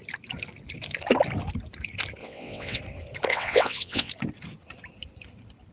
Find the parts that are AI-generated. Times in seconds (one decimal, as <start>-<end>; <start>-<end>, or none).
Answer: 2.2-2.8; 3.3-4.1